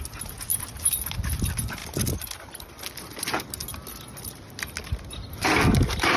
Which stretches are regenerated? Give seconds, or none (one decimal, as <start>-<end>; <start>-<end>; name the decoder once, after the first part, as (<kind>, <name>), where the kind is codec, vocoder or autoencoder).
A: none